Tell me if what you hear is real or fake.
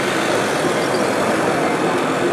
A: real